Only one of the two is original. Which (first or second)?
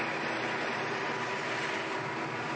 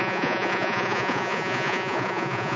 first